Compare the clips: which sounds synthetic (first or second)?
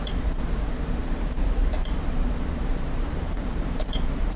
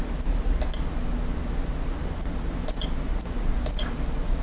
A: first